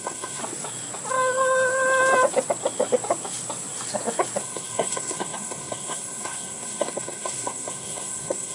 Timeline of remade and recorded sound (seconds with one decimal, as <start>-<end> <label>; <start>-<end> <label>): 0.0-0.4 remade; 0.4-4.4 recorded; 4.4-8.5 remade